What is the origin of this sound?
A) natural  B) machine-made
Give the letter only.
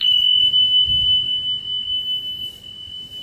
A